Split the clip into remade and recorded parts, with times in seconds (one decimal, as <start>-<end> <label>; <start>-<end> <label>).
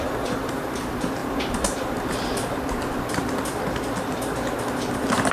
0.0-5.3 recorded